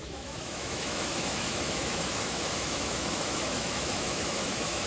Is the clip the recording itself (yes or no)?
no